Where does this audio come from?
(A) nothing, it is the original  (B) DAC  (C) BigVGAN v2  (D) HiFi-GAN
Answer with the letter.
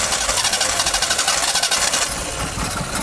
A